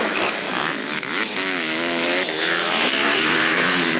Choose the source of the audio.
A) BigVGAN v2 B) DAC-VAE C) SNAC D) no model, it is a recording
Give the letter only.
B